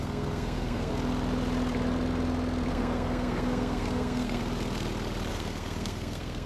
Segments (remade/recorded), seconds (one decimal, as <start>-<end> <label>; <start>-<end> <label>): 0.0-0.9 remade; 0.9-2.7 recorded; 2.7-4.4 remade; 4.4-5.3 recorded; 5.3-6.5 remade